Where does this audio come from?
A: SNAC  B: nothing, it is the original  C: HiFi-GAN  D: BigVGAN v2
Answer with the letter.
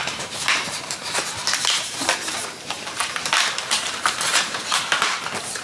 D